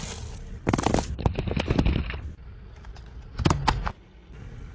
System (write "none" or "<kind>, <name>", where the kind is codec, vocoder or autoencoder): none